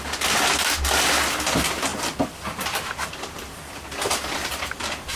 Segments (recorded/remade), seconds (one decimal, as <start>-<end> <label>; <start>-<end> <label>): 0.0-1.9 recorded; 1.9-5.2 remade